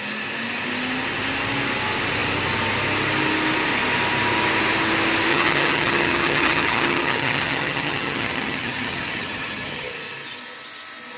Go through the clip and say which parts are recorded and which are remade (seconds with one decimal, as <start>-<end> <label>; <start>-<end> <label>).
0.0-5.3 recorded; 5.3-9.9 remade; 9.9-11.2 recorded

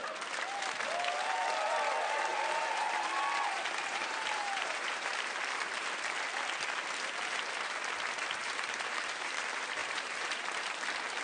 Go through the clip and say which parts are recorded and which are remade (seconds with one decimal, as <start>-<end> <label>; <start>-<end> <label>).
0.0-2.3 recorded; 2.3-3.1 remade; 3.1-3.9 recorded; 3.9-5.6 remade; 5.6-8.4 recorded; 8.4-9.4 remade; 9.4-9.8 recorded; 9.8-10.6 remade; 10.6-11.2 recorded